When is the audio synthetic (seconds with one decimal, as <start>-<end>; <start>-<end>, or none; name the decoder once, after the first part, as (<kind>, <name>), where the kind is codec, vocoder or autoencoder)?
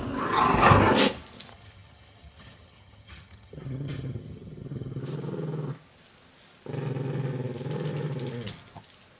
1.5-5.0 (vocoder, HiFi-GAN)